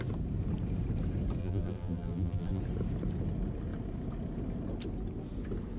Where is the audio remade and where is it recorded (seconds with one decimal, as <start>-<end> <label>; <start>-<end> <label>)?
0.0-1.4 recorded; 1.4-2.6 remade; 2.6-5.8 recorded